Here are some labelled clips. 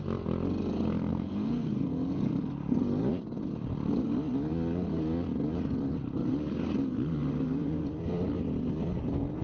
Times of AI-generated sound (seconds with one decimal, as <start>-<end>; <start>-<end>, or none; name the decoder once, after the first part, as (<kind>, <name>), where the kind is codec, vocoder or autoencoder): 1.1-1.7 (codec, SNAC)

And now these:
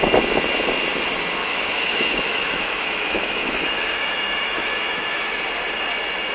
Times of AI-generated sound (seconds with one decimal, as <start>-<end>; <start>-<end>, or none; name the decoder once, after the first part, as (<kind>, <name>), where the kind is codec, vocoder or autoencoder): 1.4-5.2 (autoencoder, DAC-VAE)

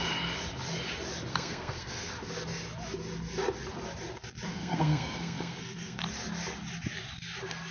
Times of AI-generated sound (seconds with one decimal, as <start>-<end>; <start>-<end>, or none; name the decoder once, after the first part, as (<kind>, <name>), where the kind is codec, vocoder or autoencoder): 1.3-2.1 (codec, SNAC); 4.5-6.0

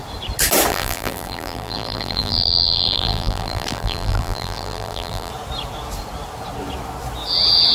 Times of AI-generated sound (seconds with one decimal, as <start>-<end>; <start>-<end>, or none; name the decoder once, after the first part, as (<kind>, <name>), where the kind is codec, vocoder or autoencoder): 0.7-5.3 (vocoder, BigVGAN v2)

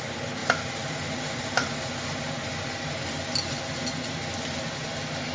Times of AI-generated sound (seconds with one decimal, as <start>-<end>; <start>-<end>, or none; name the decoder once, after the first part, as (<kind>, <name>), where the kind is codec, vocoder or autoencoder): none